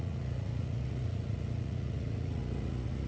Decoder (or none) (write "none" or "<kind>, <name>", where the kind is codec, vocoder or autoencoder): vocoder, Vocos